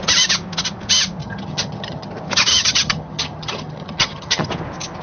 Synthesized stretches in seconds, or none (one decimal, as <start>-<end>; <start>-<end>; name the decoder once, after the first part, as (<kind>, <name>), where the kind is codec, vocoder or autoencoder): 1.2-2.1 (vocoder, HiFi-GAN); 2.5-4.5